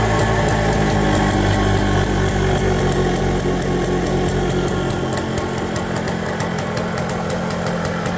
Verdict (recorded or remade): recorded